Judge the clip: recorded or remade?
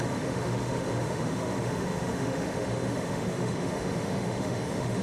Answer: remade